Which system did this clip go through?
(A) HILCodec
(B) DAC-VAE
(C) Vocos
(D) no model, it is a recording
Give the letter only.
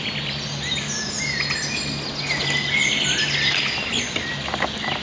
D